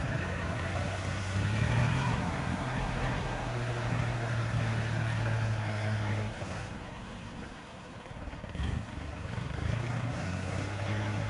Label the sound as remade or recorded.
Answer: remade